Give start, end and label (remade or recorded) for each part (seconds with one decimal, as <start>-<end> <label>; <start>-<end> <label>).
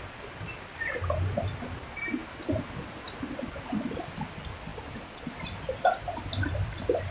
0.0-7.1 recorded